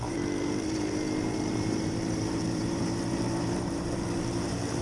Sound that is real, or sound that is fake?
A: fake